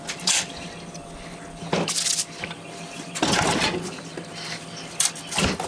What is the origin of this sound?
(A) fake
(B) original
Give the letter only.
B